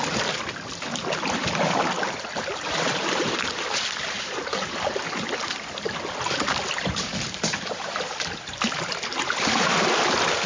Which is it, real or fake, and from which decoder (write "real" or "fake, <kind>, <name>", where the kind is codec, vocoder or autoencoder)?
real